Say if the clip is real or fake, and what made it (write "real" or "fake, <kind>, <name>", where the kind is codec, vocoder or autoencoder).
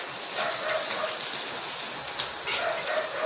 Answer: real